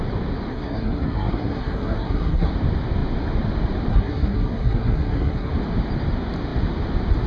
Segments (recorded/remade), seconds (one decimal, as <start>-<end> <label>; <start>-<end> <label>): 0.0-0.5 recorded; 0.5-2.5 remade; 2.5-3.9 recorded; 3.9-5.5 remade; 5.5-7.3 recorded